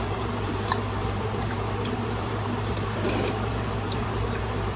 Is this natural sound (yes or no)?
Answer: no